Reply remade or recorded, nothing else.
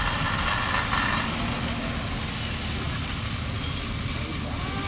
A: recorded